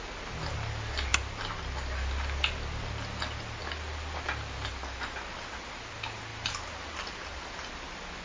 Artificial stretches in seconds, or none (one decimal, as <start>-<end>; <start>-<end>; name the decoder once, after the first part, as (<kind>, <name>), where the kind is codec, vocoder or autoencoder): none